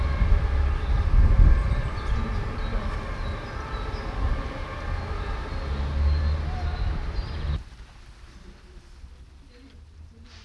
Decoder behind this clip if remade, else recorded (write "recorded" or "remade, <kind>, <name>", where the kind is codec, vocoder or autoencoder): recorded